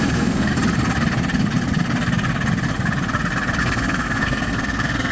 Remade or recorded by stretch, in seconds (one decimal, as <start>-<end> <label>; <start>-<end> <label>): 0.0-0.5 remade; 0.5-3.6 recorded; 3.6-5.1 remade